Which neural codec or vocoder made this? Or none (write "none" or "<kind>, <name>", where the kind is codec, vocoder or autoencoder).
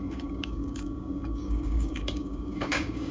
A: codec, DAC